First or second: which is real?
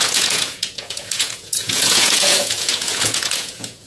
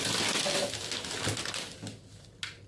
second